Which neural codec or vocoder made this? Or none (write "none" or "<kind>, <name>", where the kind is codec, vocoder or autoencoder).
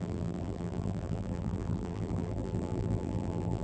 vocoder, BigVGAN v2